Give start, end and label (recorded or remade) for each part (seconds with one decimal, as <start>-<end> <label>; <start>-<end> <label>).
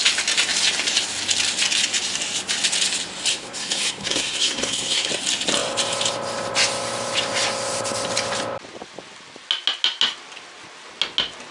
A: 0.0-3.3 recorded; 3.3-5.1 remade; 5.1-11.5 recorded